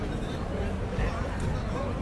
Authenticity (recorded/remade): recorded